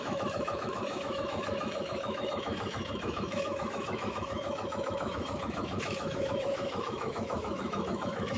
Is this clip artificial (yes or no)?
yes